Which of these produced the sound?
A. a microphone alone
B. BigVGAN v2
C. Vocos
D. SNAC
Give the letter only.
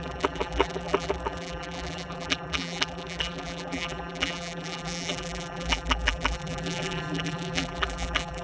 B